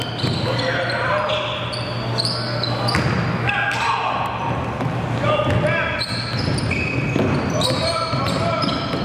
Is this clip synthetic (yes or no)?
no